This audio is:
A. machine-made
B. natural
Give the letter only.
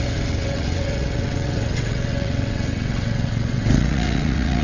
A